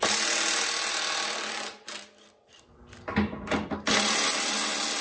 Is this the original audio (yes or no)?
yes